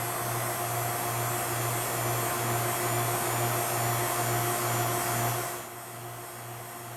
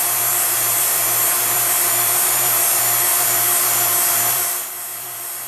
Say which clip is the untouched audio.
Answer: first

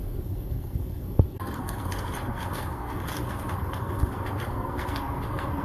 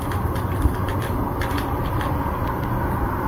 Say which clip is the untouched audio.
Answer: second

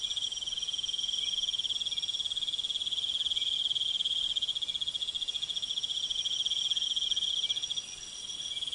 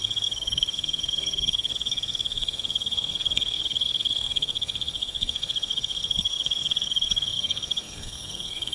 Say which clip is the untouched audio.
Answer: first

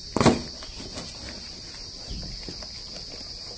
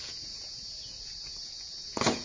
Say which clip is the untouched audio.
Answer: first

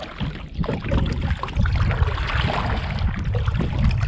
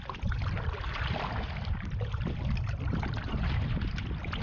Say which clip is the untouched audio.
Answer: first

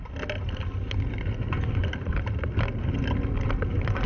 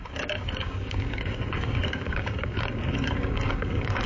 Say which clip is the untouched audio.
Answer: first